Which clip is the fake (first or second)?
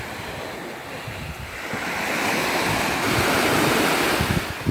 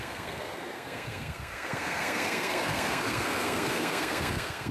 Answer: second